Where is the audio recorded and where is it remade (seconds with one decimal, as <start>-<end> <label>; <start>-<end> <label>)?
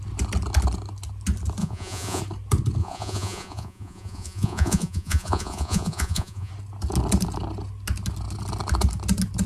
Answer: 0.0-1.6 recorded; 1.6-2.2 remade; 2.2-2.8 recorded; 2.8-6.5 remade; 6.5-9.5 recorded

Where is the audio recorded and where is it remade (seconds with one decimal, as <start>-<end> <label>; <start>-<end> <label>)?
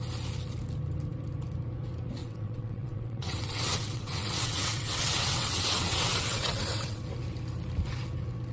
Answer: 0.0-2.2 recorded; 2.2-7.0 remade; 7.0-8.5 recorded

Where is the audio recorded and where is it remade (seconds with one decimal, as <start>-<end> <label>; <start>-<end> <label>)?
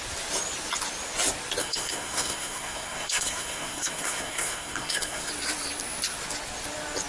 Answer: 0.0-1.6 recorded; 1.6-5.3 remade; 5.3-7.1 recorded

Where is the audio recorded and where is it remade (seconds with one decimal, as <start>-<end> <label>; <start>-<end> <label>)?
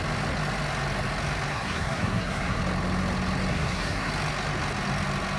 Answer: 0.0-1.5 recorded; 1.5-2.6 remade; 2.6-3.5 recorded; 3.5-4.1 remade; 4.1-5.4 recorded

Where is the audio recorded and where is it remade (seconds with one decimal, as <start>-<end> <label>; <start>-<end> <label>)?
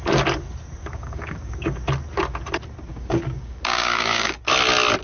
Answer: 0.0-0.8 recorded; 0.8-1.8 remade; 1.8-2.9 recorded; 2.9-4.4 remade; 4.4-5.0 recorded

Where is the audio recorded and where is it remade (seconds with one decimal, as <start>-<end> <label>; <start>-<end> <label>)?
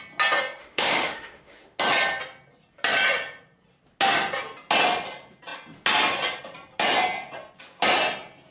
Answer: 0.0-0.6 recorded; 0.6-1.8 remade; 1.8-8.5 recorded